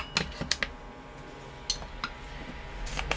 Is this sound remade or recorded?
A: recorded